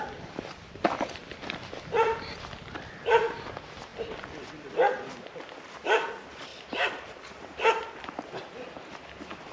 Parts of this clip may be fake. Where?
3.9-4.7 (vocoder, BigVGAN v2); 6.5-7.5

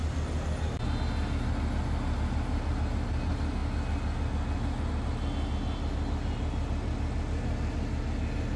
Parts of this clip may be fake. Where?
none

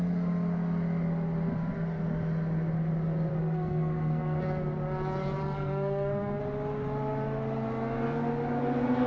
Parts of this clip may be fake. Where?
3.3-4.4 (codec, SNAC); 5.4-6.4